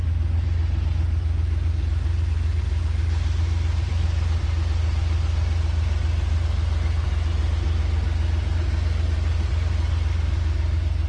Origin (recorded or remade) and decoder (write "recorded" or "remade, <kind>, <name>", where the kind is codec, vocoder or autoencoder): recorded